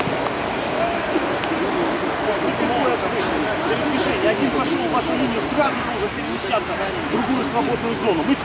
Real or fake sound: real